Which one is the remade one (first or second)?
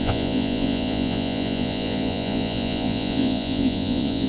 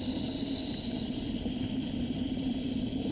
first